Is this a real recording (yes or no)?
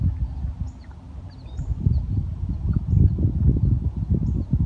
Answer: yes